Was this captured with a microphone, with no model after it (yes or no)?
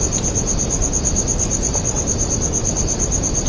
yes